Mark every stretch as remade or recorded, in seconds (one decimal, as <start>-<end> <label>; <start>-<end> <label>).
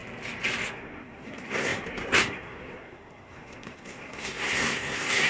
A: 0.0-0.7 recorded; 0.7-5.3 remade